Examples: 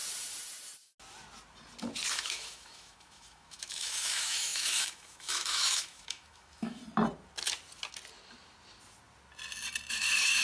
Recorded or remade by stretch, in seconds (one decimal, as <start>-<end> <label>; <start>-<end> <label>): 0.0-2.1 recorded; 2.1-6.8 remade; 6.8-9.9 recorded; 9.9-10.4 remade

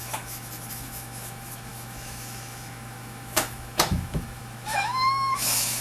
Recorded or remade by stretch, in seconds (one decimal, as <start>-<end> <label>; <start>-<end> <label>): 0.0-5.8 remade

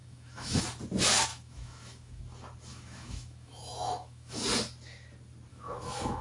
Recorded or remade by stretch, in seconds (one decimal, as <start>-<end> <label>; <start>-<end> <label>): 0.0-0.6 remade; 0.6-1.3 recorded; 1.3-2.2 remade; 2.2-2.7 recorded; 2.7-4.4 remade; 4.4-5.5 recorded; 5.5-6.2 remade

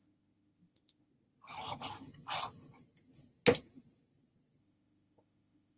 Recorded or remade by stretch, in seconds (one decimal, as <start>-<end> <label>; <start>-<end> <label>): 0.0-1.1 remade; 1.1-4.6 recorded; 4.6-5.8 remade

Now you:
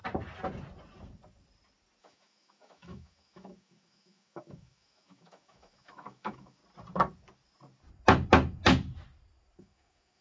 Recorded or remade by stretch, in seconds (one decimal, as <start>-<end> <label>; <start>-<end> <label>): 0.0-2.0 recorded; 2.0-6.6 remade; 6.6-9.6 recorded; 9.6-10.2 remade

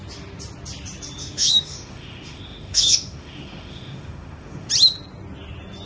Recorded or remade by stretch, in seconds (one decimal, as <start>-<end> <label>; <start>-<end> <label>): 0.0-1.2 recorded; 1.2-4.7 remade; 4.7-5.9 recorded

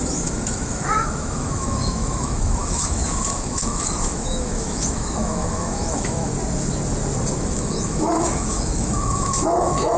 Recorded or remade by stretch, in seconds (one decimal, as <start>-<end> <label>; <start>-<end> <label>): 0.0-6.3 remade; 6.3-7.4 recorded; 7.4-10.0 remade

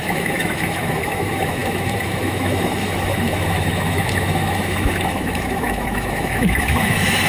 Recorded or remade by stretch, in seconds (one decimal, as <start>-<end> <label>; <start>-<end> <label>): 0.0-7.3 remade